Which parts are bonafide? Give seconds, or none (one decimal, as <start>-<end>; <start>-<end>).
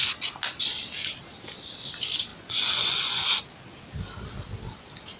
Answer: 0.0-2.3; 3.4-5.2